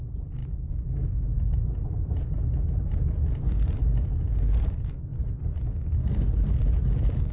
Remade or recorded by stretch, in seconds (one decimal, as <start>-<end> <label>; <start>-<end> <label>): 0.0-7.3 recorded

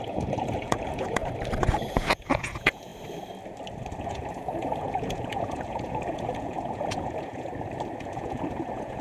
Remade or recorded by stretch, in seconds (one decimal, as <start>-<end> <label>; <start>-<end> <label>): 0.0-1.2 remade; 1.2-1.9 recorded; 1.9-2.9 remade; 2.9-4.0 recorded; 4.0-7.5 remade; 7.5-8.0 recorded; 8.0-9.0 remade

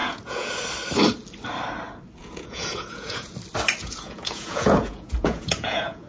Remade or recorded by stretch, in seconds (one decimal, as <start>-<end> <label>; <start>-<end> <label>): 0.0-0.5 remade; 0.5-2.2 recorded; 2.2-3.3 remade; 3.3-3.8 recorded; 3.8-6.1 remade